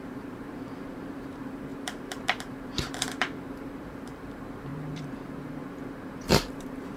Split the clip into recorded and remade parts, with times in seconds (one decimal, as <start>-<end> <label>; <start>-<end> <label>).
0.0-7.0 remade